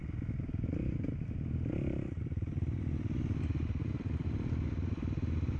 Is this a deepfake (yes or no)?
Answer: yes